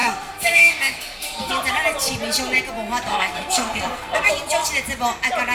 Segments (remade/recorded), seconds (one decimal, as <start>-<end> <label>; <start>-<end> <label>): 0.0-1.5 remade; 1.5-3.1 recorded; 3.1-4.3 remade; 4.3-5.5 recorded